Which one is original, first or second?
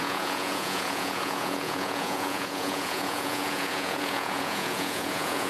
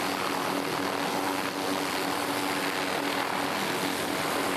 second